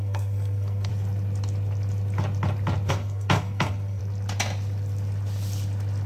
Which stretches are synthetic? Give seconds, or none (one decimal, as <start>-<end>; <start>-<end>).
0.0-0.9; 2.9-4.0